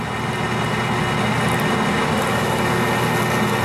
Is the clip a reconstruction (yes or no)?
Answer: no